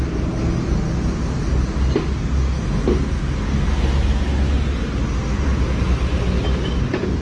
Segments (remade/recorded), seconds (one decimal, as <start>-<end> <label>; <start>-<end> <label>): 0.0-7.2 recorded